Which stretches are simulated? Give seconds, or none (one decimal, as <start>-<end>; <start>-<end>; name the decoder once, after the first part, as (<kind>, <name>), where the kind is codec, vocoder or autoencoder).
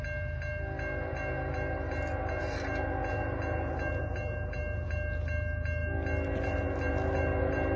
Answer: none